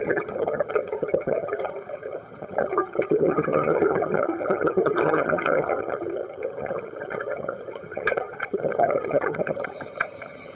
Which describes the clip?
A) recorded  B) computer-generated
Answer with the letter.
B